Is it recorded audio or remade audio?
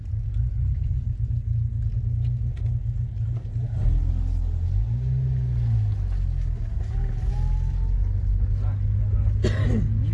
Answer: recorded